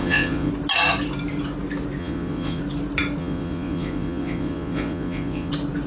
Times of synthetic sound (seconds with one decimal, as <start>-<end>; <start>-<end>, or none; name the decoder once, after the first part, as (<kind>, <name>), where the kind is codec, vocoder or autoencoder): 0.0-0.5 (vocoder, Vocos); 2.0-2.6; 3.2-5.5